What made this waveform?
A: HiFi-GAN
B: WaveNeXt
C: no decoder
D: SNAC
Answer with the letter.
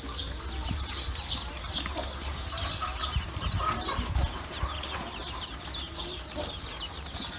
C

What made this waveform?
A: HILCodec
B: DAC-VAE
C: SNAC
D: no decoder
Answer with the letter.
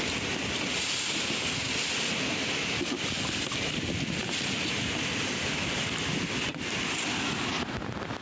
D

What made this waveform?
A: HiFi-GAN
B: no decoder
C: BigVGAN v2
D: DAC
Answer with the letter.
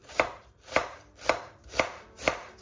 C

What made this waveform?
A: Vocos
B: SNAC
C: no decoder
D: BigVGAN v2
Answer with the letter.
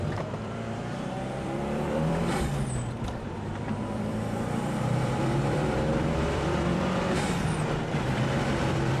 D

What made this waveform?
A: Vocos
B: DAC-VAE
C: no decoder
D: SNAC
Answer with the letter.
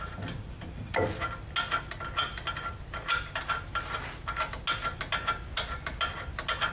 C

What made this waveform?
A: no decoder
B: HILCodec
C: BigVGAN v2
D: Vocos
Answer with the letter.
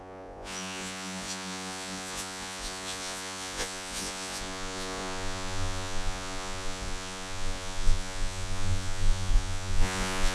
D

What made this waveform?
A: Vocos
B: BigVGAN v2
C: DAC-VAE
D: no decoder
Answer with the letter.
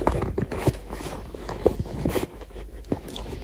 C